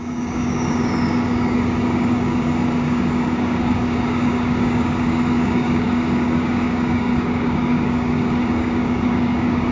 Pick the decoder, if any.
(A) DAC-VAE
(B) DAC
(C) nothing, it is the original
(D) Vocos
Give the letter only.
B